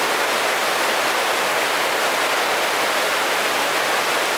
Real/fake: real